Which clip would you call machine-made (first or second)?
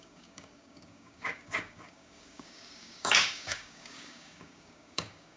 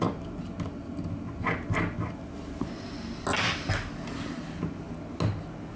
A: first